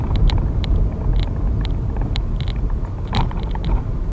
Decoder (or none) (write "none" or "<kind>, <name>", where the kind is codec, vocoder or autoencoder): vocoder, BigVGAN v2